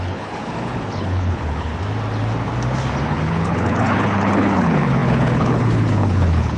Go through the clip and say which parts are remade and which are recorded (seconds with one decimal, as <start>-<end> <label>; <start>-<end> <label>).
0.0-1.7 remade; 1.7-3.0 recorded; 3.0-6.6 remade